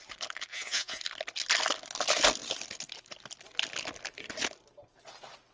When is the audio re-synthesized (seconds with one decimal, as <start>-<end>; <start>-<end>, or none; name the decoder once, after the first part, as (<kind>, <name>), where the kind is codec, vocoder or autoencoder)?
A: 0.5-1.0 (vocoder, Vocos)